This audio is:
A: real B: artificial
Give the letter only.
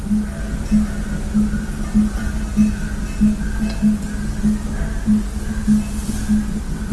A